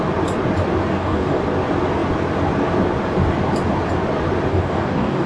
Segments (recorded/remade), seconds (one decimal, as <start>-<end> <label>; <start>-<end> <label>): 0.0-0.9 recorded; 0.9-1.4 remade; 1.4-4.5 recorded; 4.5-5.3 remade